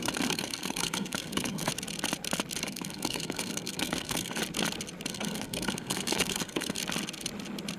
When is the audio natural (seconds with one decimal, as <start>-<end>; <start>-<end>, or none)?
1.7-2.6; 4.4-5.1; 6.8-7.8